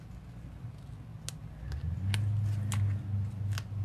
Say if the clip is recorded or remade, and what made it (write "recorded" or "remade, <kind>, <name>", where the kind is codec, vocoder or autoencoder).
recorded